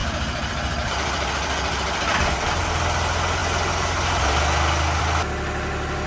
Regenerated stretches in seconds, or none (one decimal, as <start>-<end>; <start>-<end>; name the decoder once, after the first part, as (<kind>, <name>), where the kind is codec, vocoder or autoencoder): 0.0-2.6 (vocoder, BigVGAN v2)